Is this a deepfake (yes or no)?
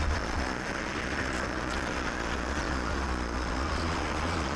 yes